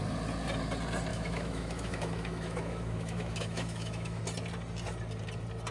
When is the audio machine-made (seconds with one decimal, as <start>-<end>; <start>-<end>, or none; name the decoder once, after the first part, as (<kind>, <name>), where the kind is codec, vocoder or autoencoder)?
1.1-4.2 (autoencoder, DAC-VAE)